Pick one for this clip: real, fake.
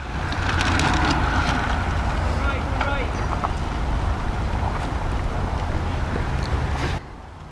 real